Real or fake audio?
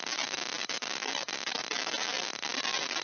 real